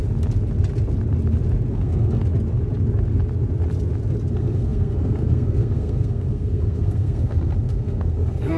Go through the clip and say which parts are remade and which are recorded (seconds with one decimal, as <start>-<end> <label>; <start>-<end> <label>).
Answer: 0.0-1.7 recorded; 1.7-2.2 remade; 2.2-4.3 recorded; 4.3-8.6 remade